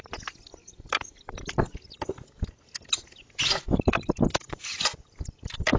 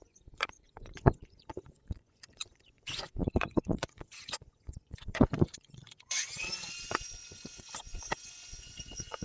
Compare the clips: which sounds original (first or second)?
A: first